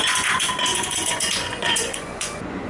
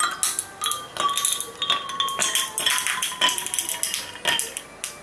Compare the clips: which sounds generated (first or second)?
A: first